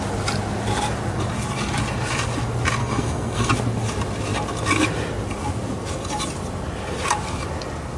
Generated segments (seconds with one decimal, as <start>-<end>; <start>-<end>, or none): 2.8-3.5